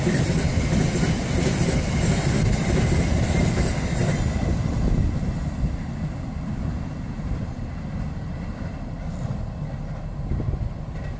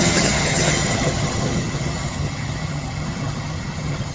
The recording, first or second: first